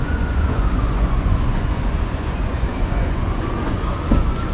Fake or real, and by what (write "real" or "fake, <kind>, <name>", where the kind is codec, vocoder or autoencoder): fake, vocoder, Vocos